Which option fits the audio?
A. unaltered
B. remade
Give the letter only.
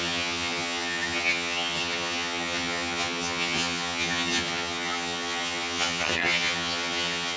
B